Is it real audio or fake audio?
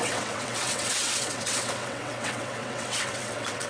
fake